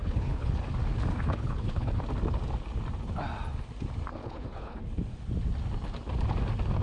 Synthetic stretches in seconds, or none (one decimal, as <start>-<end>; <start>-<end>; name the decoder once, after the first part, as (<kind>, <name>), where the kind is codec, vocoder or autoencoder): 0.0-0.5 (codec, HILCodec); 1.1-2.0; 4.2-4.8